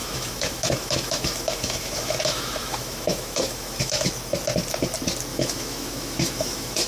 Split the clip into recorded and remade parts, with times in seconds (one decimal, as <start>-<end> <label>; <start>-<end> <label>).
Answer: 0.0-4.1 remade; 4.1-5.3 recorded; 5.3-6.9 remade